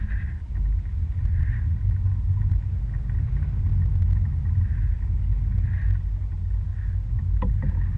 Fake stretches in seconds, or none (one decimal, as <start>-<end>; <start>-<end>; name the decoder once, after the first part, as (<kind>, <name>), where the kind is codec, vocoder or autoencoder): none